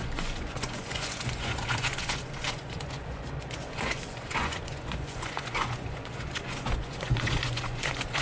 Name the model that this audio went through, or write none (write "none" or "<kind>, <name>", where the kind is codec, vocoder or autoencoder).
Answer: vocoder, Vocos